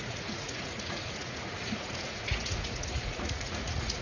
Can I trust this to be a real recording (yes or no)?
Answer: no